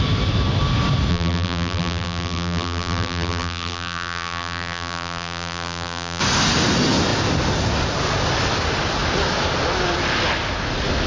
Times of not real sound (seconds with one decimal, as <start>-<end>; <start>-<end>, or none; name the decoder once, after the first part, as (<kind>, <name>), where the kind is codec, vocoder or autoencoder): 1.1-6.2 (vocoder, BigVGAN v2)